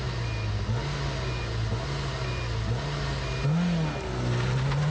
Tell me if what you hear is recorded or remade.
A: recorded